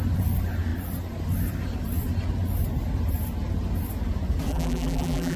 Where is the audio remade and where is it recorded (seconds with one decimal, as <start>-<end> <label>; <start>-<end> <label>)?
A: 0.0-4.5 recorded; 4.5-5.4 remade